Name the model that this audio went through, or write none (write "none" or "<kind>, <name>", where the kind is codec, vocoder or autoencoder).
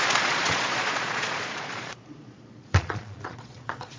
vocoder, Vocos